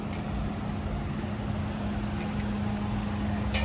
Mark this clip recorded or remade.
recorded